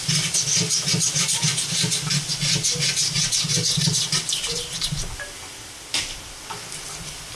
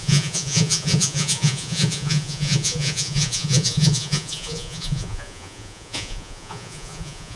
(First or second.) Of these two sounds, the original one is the first